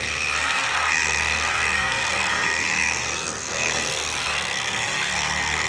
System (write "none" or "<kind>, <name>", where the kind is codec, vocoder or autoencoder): codec, SNAC